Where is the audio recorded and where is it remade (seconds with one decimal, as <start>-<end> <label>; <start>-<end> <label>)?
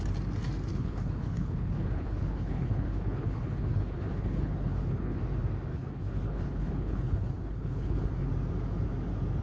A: 0.0-0.7 recorded; 0.7-5.2 remade; 5.2-5.7 recorded; 5.7-8.3 remade; 8.3-9.4 recorded